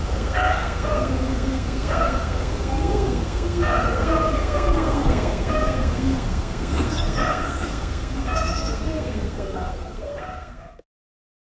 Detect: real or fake fake